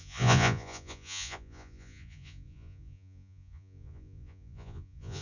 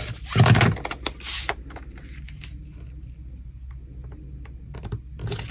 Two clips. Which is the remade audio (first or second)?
first